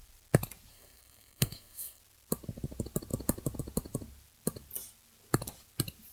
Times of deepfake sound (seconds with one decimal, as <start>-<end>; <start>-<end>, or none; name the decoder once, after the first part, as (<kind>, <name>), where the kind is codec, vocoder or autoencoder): 0.7-2.0 (codec, SNAC)